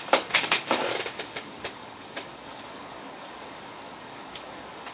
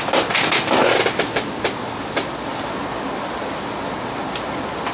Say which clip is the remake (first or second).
first